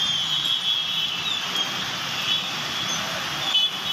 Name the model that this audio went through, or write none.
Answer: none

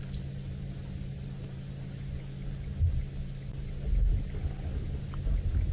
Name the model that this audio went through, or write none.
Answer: none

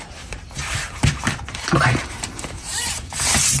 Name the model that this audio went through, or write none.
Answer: vocoder, BigVGAN v2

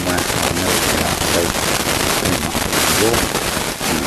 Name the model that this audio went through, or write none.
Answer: none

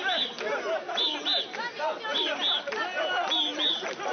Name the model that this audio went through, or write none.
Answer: none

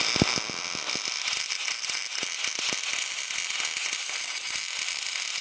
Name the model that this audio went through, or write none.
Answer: none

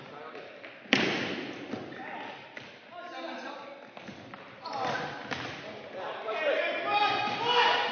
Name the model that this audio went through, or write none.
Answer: none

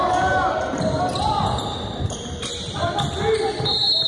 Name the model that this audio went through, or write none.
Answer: none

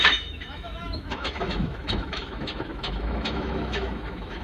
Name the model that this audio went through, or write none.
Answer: autoencoder, DAC-VAE